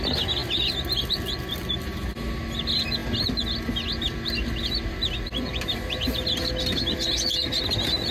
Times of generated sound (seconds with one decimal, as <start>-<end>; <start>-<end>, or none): none